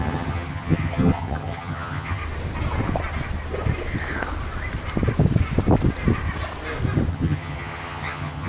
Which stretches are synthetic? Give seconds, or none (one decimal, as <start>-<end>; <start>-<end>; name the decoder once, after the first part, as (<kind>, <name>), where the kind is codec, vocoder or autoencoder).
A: 0.0-2.2 (vocoder, HiFi-GAN); 7.1-8.5